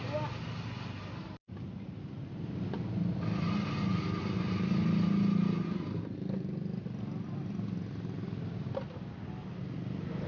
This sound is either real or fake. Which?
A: real